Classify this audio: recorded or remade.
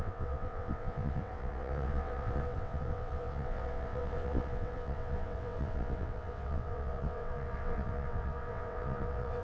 remade